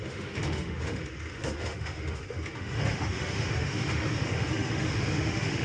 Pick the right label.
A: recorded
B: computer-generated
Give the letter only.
B